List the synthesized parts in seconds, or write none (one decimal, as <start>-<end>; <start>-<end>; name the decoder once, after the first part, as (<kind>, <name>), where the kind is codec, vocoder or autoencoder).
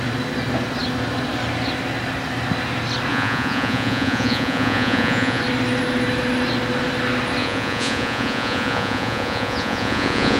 3.1-5.4 (vocoder, Vocos); 7.4-10.4